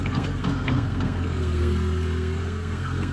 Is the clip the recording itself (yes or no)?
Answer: no